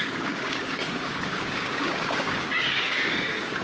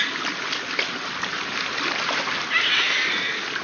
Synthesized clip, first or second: first